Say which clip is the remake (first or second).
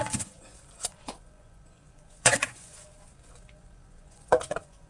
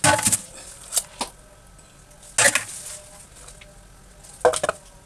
first